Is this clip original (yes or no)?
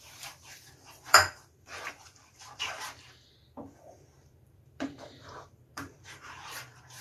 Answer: no